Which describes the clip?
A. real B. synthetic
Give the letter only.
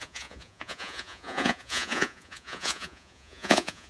B